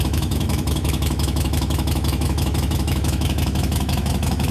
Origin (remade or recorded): remade